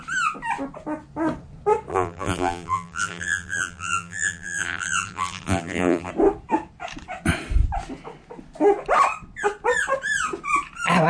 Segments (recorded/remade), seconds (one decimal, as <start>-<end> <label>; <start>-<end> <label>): 0.0-1.9 recorded; 1.9-6.1 remade; 6.1-11.1 recorded